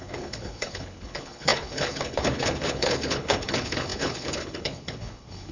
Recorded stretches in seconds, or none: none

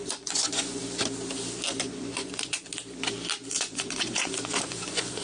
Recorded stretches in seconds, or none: 0.8-1.8; 2.7-3.5

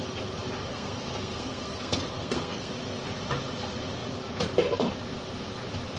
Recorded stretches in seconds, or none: 0.0-0.7; 2.7-6.0

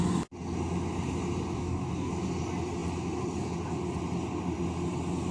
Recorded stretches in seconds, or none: 0.0-1.6; 2.1-5.3

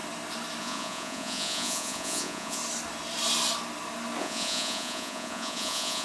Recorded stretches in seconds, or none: 0.0-0.6; 2.6-4.2

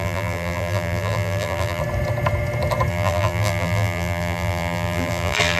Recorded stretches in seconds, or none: 1.8-2.9

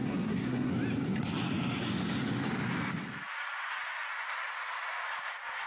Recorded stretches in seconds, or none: 0.7-5.7

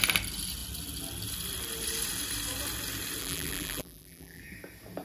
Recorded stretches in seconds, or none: 0.0-3.2; 4.4-5.0